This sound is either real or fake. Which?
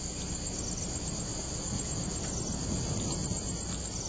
real